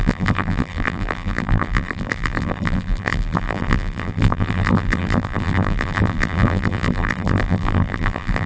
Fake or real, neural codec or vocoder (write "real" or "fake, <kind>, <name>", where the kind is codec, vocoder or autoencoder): fake, vocoder, BigVGAN v2